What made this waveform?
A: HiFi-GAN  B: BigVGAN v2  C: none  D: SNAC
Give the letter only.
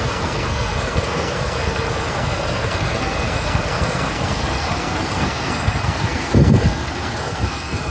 D